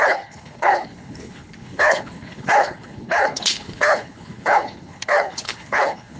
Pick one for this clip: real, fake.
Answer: fake